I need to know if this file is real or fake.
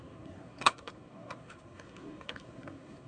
fake